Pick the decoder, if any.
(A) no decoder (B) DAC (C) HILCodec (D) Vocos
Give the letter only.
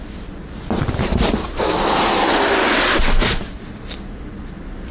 A